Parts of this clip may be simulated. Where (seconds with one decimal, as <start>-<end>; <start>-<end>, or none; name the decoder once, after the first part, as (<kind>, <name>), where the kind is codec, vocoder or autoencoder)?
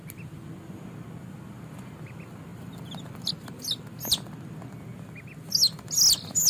none